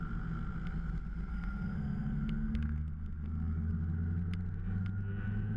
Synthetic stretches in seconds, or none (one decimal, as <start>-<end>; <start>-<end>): 1.3-3.7